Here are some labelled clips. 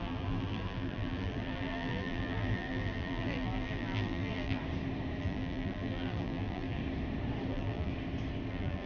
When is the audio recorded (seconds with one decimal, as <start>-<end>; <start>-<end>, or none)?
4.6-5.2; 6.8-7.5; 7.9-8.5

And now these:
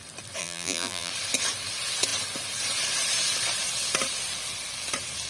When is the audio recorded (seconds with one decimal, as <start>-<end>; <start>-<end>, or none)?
0.0-0.4; 1.1-5.3

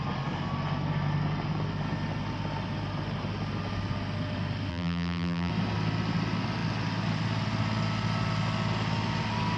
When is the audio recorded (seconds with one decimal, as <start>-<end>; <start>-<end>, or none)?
0.0-4.7; 5.5-9.6

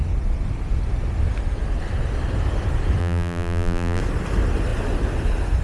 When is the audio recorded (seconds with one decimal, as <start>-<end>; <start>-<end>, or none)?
0.0-3.0; 4.0-5.6

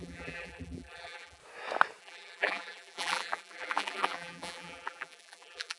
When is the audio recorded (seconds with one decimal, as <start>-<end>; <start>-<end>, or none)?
1.4-2.0